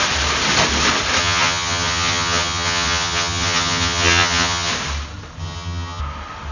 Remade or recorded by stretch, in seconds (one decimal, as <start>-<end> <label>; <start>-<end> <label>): 0.0-1.2 recorded; 1.2-4.7 remade; 4.7-5.4 recorded; 5.4-6.0 remade; 6.0-6.5 recorded